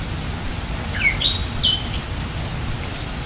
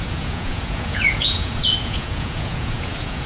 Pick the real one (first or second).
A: first